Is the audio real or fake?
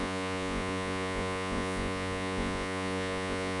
fake